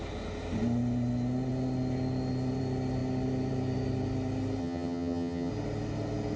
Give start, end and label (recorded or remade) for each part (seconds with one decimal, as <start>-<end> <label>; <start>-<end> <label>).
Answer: 0.0-4.6 recorded; 4.6-5.5 remade; 5.5-6.4 recorded